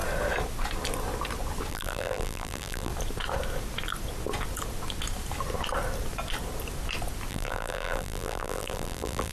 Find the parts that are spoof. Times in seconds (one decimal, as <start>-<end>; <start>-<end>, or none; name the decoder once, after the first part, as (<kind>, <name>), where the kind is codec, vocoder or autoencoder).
1.7-2.9 (vocoder, BigVGAN v2); 7.3-9.3